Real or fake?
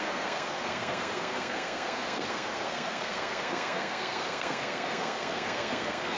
fake